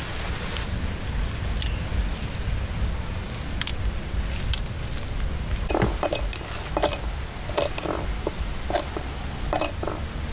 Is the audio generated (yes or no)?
no